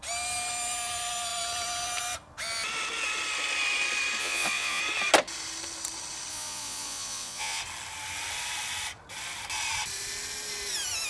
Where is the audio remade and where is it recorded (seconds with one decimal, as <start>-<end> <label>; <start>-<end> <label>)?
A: 0.0-4.2 recorded; 4.2-4.8 remade; 4.8-6.3 recorded; 6.3-7.6 remade; 7.6-11.1 recorded